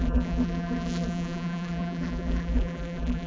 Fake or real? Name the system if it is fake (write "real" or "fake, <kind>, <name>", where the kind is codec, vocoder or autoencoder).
fake, vocoder, BigVGAN v2